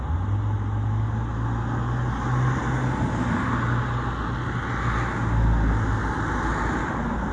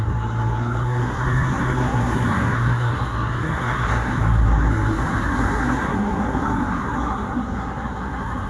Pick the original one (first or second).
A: first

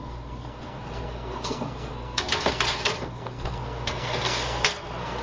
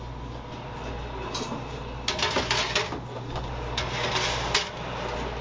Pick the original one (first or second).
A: second